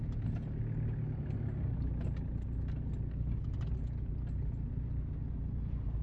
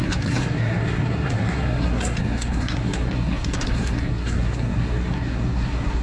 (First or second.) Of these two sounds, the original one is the first